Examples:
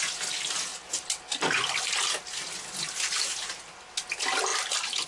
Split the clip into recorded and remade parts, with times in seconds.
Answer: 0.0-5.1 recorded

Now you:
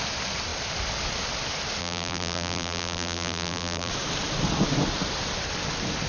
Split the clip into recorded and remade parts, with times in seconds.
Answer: 0.0-1.8 recorded; 1.8-3.9 remade; 3.9-6.1 recorded

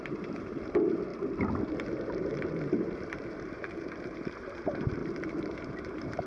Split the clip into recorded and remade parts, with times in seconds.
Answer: 0.0-1.1 remade; 1.1-1.7 recorded; 1.7-6.3 remade

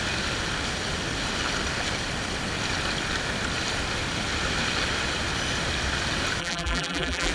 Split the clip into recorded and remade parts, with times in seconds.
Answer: 0.0-6.4 recorded; 6.4-7.3 remade

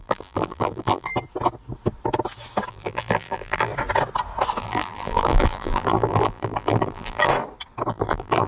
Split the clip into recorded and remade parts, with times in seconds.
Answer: 0.0-1.1 remade; 1.1-2.7 recorded; 2.7-3.7 remade; 3.7-4.6 recorded; 4.6-7.3 remade; 7.3-7.9 recorded; 7.9-8.5 remade

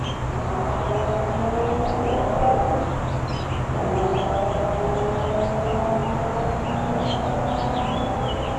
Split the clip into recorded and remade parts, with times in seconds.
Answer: 0.0-8.6 recorded

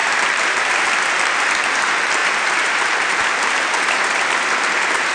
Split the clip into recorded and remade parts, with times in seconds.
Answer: 0.0-0.7 remade; 0.7-2.2 recorded; 2.2-4.2 remade; 4.2-5.1 recorded

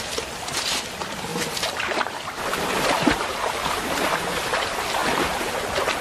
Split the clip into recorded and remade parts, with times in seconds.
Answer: 0.0-1.3 remade; 1.3-1.8 recorded; 1.8-5.0 remade; 5.0-6.0 recorded